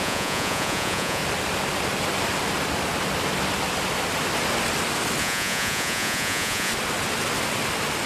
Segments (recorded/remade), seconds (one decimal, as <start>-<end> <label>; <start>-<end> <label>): 0.0-1.2 remade; 1.2-5.2 recorded; 5.2-6.7 remade; 6.7-8.1 recorded